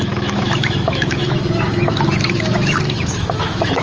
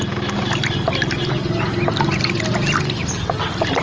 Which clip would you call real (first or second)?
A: second